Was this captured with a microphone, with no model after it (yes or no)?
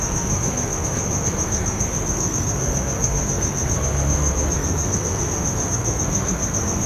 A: no